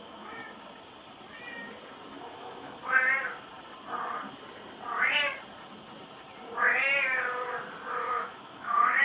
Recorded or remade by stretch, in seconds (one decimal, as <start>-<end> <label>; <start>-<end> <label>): 0.0-0.4 remade; 0.4-2.1 recorded; 2.1-2.8 remade; 2.8-7.9 recorded; 7.9-9.0 remade